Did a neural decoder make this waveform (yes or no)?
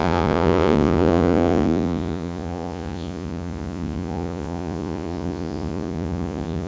yes